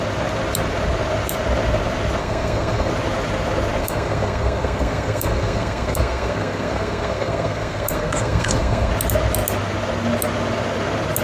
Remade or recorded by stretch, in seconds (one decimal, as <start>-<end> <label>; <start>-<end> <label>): 0.0-2.2 recorded; 2.2-2.9 remade; 2.9-3.8 recorded; 3.8-8.9 remade; 8.9-11.2 recorded